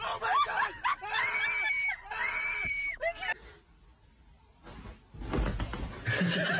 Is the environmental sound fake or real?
real